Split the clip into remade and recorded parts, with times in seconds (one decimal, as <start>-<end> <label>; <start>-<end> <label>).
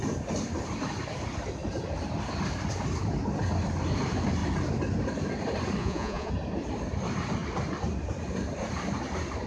0.0-5.8 recorded; 5.8-6.3 remade; 6.3-9.5 recorded